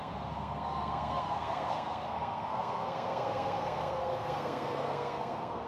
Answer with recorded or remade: remade